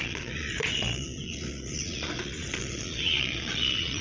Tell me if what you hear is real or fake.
fake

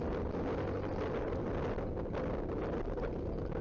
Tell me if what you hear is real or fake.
real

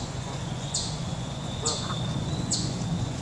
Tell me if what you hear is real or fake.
fake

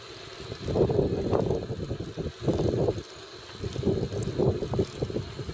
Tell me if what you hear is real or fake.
real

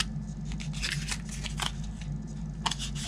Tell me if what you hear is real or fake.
real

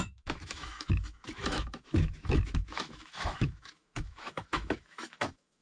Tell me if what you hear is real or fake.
fake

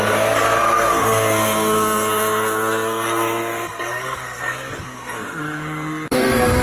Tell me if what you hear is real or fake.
fake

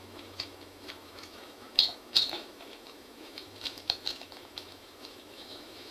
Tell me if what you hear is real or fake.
fake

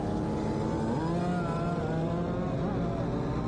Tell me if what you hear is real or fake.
real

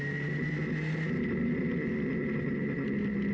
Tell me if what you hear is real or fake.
real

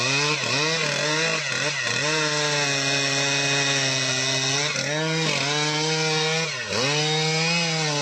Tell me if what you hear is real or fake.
real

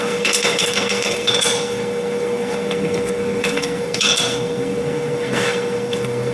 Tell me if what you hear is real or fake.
fake